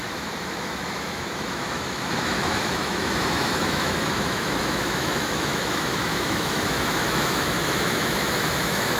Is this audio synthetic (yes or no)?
yes